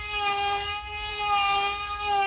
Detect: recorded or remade remade